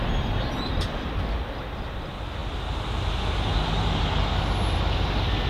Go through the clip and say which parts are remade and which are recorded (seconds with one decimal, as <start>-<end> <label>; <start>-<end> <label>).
0.0-5.5 recorded